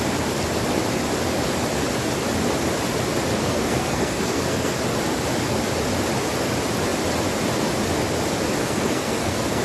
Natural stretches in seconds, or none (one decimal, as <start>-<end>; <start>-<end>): 0.0-3.3; 4.8-8.6